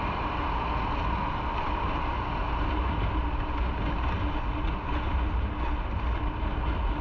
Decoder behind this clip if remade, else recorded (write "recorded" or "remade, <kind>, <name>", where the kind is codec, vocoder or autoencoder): recorded